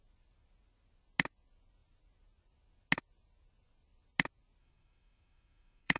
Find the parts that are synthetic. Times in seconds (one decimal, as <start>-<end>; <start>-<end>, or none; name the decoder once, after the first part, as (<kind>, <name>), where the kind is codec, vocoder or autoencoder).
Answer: 4.6-6.0 (autoencoder, DAC-VAE)